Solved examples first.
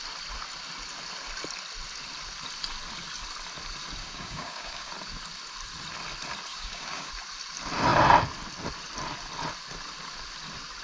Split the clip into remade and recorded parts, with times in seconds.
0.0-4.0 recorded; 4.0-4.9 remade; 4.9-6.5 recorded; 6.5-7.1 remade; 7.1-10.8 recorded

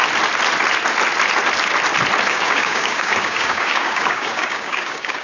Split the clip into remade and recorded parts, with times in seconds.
0.0-2.3 recorded; 2.3-5.2 remade